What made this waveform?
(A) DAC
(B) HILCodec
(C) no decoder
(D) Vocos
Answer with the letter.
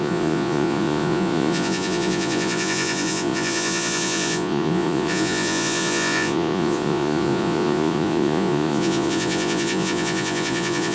D